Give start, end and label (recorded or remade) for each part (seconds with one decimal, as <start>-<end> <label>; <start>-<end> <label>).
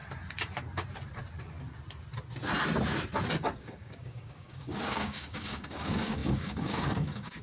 0.0-3.6 recorded; 3.6-7.4 remade